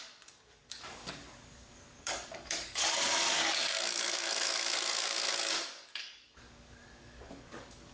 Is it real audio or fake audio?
fake